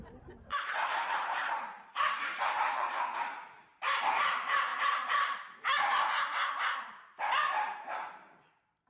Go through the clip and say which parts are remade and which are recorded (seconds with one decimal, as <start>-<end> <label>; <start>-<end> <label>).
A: 0.0-8.9 remade